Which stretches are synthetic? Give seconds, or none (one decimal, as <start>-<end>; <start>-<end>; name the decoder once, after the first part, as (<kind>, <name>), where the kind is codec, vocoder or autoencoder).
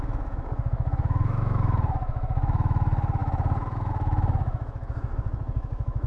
0.0-6.1 (autoencoder, DAC-VAE)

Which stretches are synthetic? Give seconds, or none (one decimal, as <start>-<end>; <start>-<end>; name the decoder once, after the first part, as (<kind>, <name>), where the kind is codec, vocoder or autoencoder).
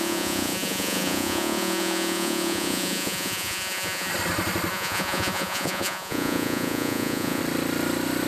0.0-4.1 (vocoder, Vocos); 4.7-7.4